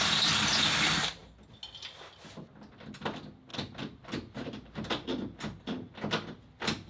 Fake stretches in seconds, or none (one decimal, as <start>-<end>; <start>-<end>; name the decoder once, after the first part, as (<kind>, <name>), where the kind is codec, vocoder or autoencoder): 3.5-5.4 (vocoder, BigVGAN v2)